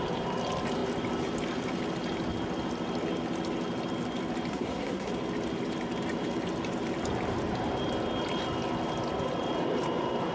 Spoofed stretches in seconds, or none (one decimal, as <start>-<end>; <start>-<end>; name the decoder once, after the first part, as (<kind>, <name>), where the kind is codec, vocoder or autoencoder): 4.5-5.1 (codec, SNAC)